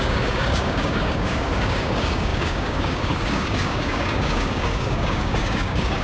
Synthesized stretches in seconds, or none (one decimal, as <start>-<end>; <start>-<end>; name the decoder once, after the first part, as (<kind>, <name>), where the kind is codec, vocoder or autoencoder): 0.0-6.0 (codec, DAC)